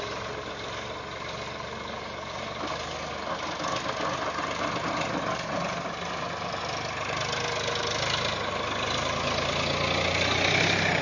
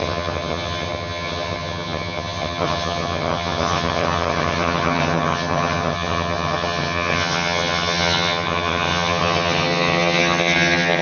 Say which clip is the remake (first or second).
second